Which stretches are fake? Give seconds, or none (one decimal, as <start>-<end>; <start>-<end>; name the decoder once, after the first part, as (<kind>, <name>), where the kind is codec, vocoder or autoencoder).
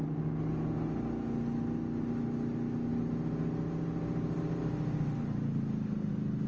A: none